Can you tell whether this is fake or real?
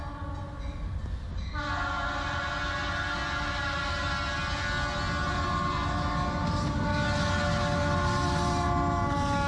real